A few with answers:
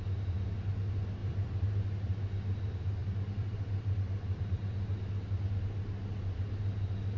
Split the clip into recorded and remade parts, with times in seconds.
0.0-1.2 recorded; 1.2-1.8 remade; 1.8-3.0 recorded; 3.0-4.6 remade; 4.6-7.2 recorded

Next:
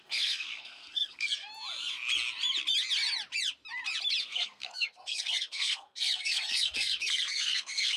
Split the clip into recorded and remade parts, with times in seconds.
0.0-1.5 remade; 1.5-4.2 recorded; 4.2-8.0 remade

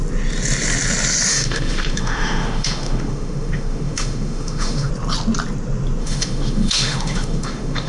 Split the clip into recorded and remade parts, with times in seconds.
0.0-1.3 recorded; 1.3-4.9 remade; 4.9-6.0 recorded; 6.0-7.9 remade

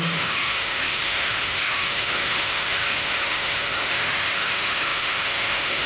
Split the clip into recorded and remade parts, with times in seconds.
0.0-5.9 remade